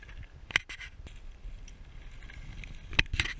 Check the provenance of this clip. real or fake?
real